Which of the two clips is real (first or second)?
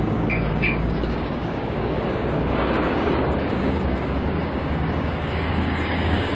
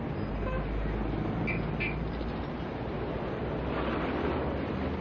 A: second